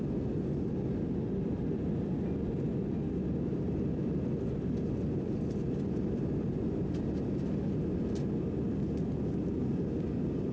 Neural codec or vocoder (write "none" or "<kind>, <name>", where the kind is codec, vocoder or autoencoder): none